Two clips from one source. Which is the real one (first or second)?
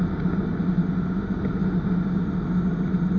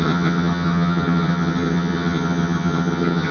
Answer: first